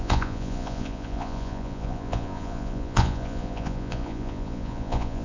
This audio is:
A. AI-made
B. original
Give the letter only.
A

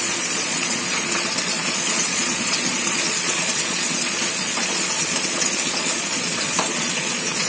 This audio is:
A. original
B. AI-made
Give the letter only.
B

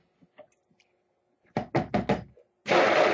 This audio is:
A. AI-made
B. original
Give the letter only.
B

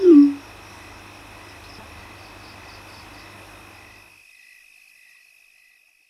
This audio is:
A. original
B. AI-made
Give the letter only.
A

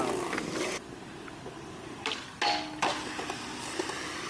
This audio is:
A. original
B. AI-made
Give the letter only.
A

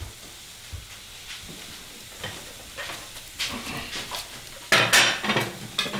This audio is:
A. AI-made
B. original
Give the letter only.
B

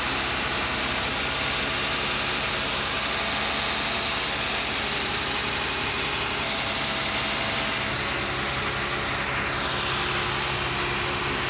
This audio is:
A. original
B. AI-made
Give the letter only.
A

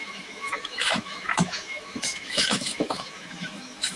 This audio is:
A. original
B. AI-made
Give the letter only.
B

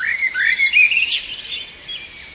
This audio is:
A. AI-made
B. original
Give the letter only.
B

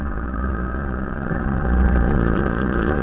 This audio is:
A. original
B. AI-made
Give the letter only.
B